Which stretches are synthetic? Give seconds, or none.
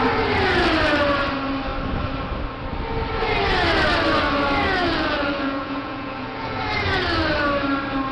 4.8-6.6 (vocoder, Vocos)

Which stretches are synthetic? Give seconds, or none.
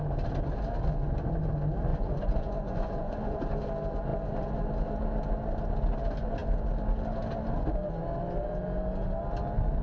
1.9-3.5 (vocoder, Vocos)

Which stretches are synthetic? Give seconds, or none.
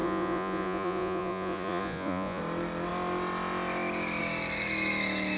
0.0-2.4 (vocoder, Vocos)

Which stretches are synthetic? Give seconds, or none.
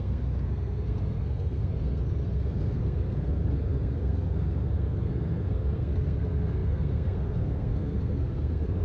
0.0-8.8 (codec, SNAC)